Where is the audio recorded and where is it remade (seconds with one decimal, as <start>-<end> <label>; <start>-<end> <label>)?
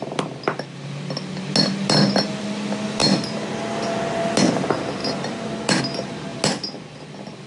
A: 0.0-7.5 recorded